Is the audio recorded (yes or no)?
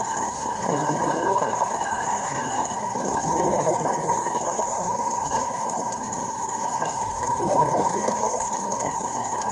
no